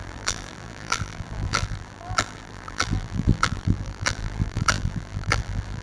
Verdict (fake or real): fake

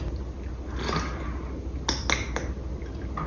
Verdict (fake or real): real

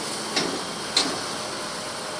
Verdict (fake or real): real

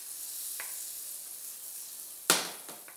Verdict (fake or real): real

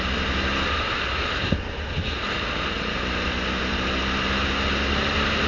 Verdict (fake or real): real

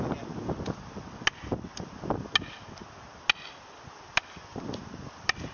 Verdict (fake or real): real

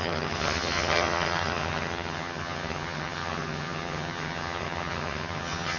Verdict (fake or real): fake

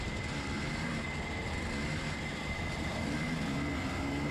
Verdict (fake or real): real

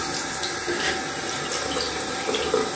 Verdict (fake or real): real